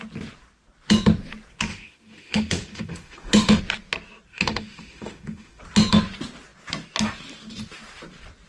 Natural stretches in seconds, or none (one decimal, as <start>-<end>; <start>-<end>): 0.0-1.7; 3.6-4.3; 5.6-8.5